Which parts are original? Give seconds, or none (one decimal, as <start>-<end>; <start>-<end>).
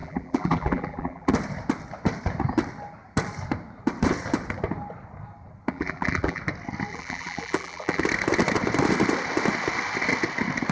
1.3-5.7; 6.4-6.9; 8.0-10.7